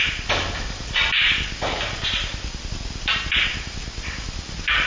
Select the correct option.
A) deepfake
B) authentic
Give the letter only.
B